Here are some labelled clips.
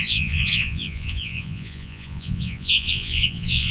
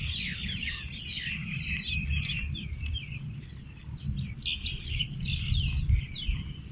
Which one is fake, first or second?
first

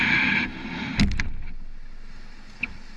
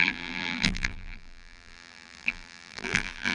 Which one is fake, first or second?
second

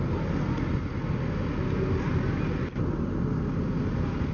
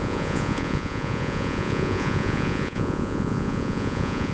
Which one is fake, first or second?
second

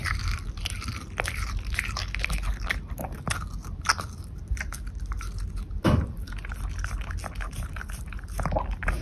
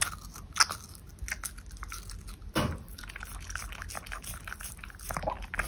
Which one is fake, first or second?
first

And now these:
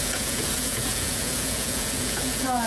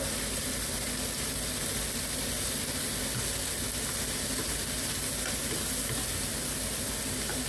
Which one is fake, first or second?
first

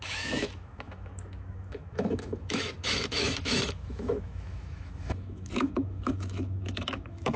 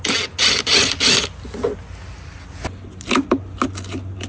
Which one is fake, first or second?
first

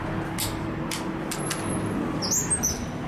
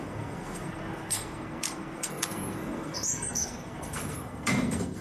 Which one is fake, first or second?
second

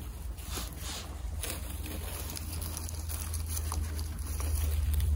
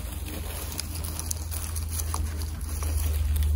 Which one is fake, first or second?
first